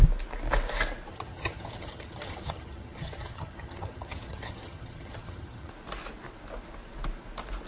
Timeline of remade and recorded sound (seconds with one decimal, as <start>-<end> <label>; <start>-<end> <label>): 0.0-1.1 recorded; 1.1-5.7 remade; 5.7-7.7 recorded